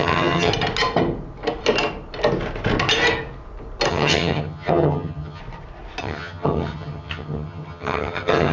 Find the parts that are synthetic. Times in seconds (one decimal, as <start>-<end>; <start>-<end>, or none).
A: 0.0-0.5; 3.9-5.4; 6.0-8.5